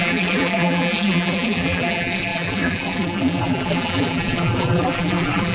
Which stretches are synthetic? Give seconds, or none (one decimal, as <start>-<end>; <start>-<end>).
0.0-5.5